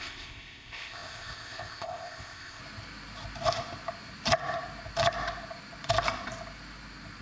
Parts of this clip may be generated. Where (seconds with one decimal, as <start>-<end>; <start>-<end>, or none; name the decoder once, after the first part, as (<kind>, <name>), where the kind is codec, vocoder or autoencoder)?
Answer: 0.0-2.6 (codec, ZipCodec)